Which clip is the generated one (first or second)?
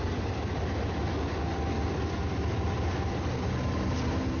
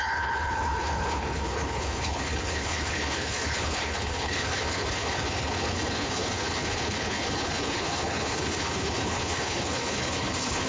second